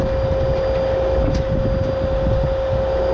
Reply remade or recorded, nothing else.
recorded